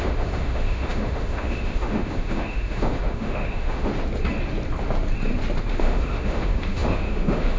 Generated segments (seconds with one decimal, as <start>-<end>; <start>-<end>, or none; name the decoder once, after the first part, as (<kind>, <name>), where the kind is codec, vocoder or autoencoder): 0.0-3.9 (autoencoder, DAC-VAE); 5.7-7.6